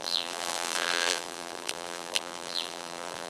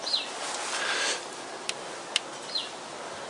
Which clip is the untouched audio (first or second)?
second